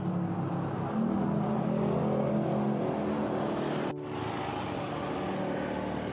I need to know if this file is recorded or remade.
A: recorded